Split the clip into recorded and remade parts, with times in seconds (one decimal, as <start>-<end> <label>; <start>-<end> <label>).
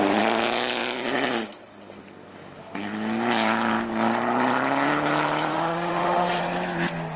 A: 0.0-5.5 recorded; 5.5-6.4 remade; 6.4-7.2 recorded